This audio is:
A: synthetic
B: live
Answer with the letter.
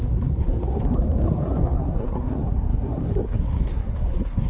A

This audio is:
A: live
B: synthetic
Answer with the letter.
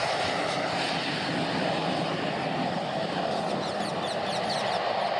A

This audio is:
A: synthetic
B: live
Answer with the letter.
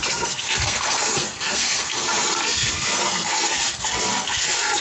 A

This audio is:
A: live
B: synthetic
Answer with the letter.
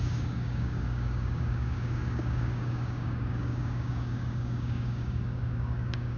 B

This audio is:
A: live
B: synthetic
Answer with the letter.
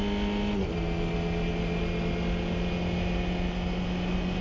A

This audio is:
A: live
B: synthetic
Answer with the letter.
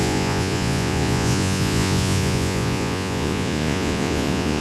B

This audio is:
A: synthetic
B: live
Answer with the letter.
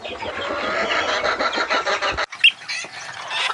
B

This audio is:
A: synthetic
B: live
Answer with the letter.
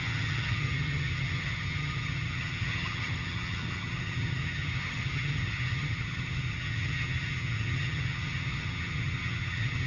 A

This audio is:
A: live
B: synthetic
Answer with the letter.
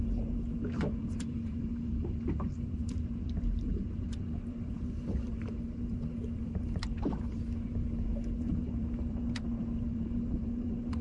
B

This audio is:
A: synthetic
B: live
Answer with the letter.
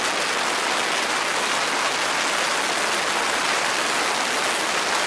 B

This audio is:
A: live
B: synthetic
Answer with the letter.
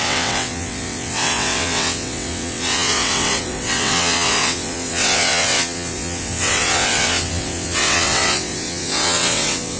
B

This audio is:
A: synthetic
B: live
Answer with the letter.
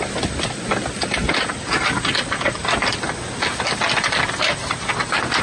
B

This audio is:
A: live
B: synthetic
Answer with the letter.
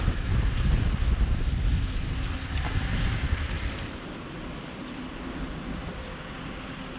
A